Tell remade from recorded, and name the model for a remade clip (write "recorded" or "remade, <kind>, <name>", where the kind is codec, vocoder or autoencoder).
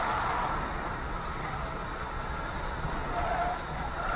recorded